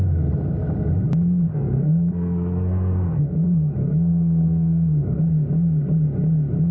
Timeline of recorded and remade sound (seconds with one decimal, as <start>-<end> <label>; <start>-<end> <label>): 0.0-1.5 recorded; 1.5-5.2 remade; 5.2-6.7 recorded